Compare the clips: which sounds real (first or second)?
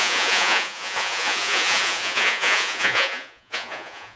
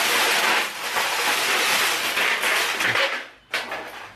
second